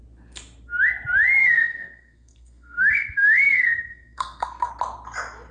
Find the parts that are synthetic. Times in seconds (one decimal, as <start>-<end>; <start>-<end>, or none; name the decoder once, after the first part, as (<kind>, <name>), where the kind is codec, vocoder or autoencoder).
1.4-4.7 (codec, SNAC)